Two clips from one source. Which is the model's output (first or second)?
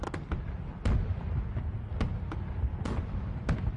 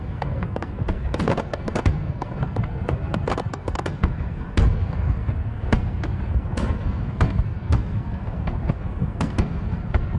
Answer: second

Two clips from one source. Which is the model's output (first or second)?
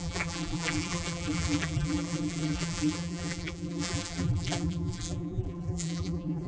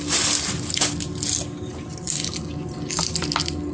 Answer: first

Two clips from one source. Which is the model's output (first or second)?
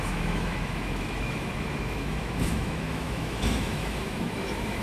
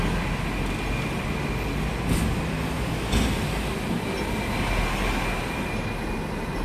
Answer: first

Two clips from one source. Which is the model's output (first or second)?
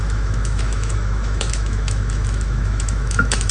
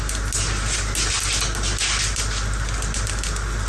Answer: first